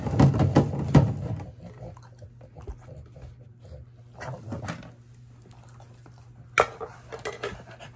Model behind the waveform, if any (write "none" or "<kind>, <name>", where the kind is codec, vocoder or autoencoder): none